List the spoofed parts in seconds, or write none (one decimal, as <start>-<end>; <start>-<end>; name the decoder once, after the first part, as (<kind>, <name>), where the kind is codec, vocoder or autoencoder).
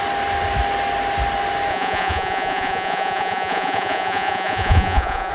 1.7-5.3 (vocoder, Vocos)